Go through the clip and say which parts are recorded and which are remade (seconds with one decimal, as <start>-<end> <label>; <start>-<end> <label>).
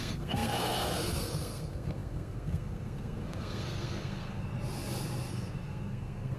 0.0-4.5 remade; 4.5-5.3 recorded; 5.3-6.4 remade